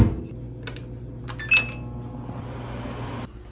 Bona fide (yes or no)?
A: yes